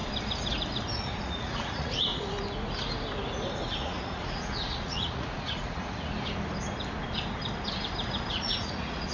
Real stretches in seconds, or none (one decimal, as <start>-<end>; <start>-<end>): 0.0-1.0; 2.1-3.8; 6.1-8.4